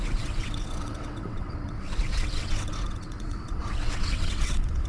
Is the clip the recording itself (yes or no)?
no